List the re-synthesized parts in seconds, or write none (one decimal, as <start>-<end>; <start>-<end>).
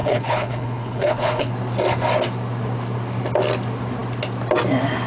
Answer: 0.0-1.5